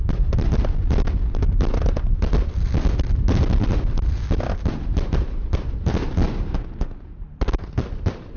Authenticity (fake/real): real